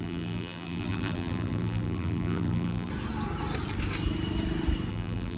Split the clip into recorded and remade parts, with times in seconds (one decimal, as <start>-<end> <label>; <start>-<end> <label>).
0.0-2.9 remade; 2.9-4.9 recorded; 4.9-5.4 remade